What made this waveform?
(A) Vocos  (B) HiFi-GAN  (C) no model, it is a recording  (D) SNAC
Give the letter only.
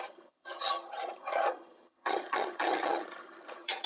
B